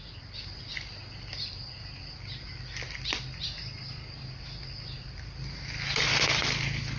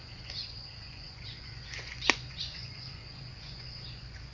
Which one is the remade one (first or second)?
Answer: second